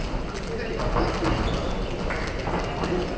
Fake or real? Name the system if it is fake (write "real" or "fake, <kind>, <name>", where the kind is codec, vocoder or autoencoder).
real